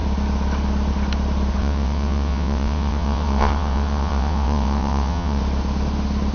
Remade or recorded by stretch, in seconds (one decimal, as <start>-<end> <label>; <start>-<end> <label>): 0.0-1.6 recorded; 1.6-5.4 remade; 5.4-6.3 recorded